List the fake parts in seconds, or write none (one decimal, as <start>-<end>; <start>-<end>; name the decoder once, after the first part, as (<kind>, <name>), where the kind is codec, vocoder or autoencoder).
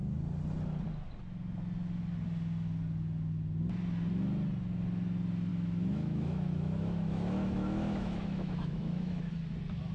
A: 5.5-9.3 (autoencoder, DAC-VAE)